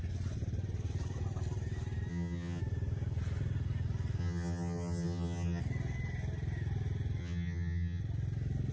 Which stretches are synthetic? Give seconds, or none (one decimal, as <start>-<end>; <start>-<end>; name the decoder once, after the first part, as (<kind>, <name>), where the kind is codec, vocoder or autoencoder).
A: 2.1-2.6 (vocoder, HiFi-GAN); 4.2-5.6; 7.2-8.0